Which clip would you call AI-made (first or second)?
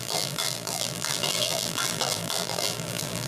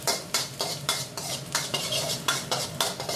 first